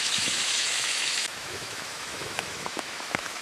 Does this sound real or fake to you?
fake